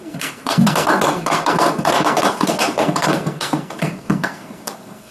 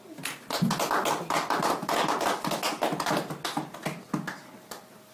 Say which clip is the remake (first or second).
first